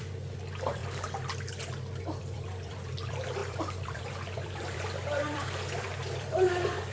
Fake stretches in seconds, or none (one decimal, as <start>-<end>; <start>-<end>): 0.0-0.8; 2.0-6.9